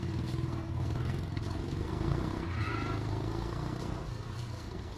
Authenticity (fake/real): fake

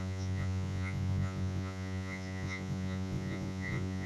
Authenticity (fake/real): fake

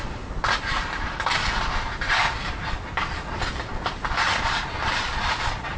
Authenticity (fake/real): fake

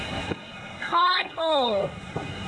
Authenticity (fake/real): fake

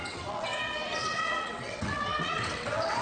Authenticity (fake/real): fake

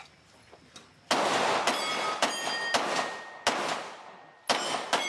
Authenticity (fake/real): real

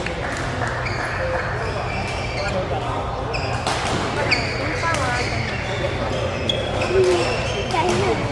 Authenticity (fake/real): real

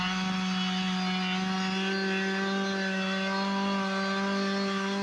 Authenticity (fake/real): real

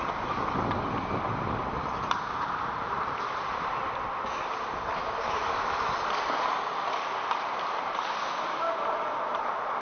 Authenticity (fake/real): real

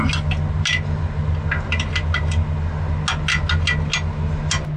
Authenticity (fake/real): real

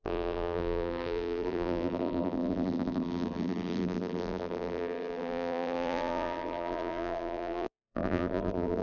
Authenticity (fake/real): fake